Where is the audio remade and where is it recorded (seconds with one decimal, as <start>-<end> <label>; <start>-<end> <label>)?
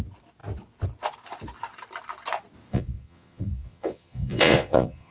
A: 0.0-2.7 recorded; 2.7-5.1 remade